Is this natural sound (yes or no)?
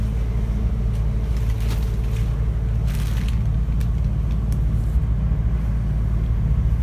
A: yes